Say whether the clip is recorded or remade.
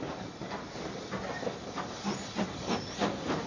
recorded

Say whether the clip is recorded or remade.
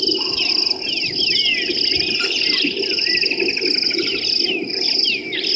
recorded